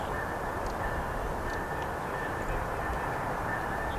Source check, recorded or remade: recorded